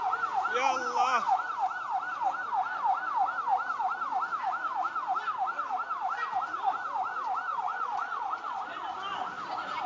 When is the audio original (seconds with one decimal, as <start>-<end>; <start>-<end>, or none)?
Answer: 0.0-7.5; 8.6-9.9